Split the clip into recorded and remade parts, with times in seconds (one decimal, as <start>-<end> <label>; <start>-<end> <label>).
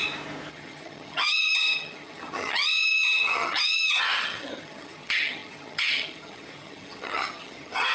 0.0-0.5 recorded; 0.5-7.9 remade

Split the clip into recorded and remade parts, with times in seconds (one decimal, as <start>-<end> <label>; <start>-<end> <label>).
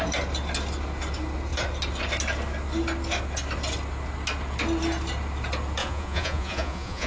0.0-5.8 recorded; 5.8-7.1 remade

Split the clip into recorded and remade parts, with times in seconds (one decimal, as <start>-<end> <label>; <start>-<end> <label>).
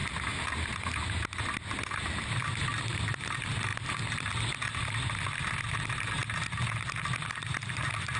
0.0-8.2 recorded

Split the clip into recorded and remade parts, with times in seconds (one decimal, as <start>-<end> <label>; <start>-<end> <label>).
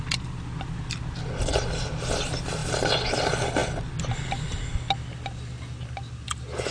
0.0-6.7 recorded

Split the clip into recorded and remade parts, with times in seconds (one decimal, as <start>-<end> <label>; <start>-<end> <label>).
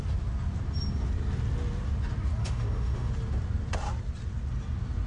0.0-2.4 recorded; 2.4-3.1 remade; 3.1-5.1 recorded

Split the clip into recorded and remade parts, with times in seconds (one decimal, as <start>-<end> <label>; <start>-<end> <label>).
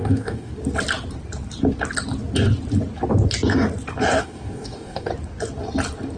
0.0-0.5 remade; 0.5-4.2 recorded; 4.2-5.1 remade; 5.1-6.2 recorded